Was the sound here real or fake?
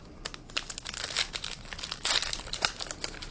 real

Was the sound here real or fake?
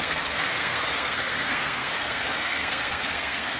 fake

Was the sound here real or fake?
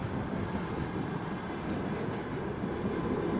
real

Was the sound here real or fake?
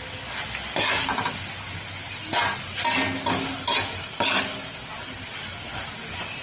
real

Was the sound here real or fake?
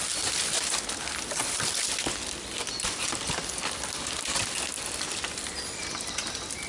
real